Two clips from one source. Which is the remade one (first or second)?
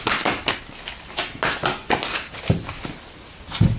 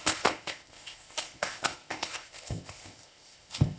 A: second